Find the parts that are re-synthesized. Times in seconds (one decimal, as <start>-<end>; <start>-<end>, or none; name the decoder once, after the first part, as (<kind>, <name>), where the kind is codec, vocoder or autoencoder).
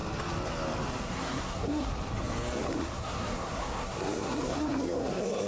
1.0-1.9 (codec, SNAC); 2.6-5.5